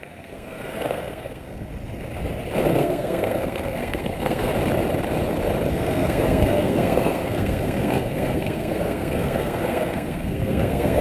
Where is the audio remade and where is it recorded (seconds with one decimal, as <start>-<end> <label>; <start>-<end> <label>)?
0.0-1.7 remade; 1.7-2.7 recorded; 2.7-4.5 remade; 4.5-5.7 recorded; 5.7-11.0 remade